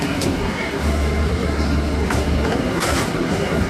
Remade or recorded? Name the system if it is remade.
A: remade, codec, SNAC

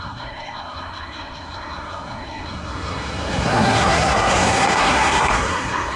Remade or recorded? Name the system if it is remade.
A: remade, codec, SNAC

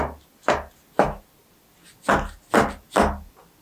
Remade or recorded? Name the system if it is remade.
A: recorded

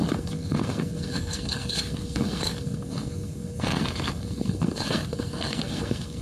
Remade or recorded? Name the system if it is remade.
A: remade, codec, SNAC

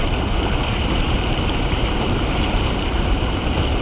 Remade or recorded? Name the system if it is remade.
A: recorded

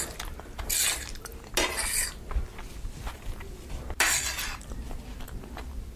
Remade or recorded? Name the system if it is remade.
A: recorded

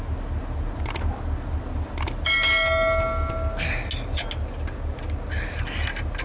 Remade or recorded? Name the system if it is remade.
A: recorded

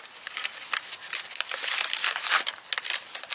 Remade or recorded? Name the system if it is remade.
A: recorded